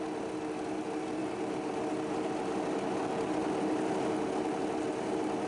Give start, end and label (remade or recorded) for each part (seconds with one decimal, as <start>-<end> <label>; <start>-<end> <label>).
0.0-5.5 recorded